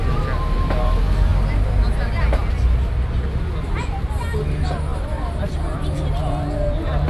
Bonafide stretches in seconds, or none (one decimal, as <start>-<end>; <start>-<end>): 0.0-7.1